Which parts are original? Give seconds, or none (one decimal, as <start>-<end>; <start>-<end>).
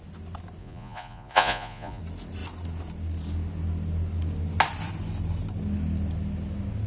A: 0.0-0.6; 2.0-6.9